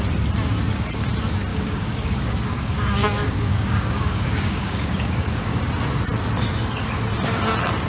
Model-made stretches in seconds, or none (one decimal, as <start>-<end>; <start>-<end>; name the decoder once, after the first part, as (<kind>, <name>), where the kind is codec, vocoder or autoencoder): 1.5-5.6 (codec, DAC)